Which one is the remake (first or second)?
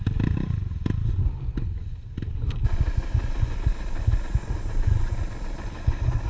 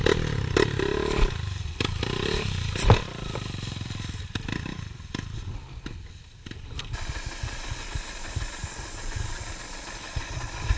second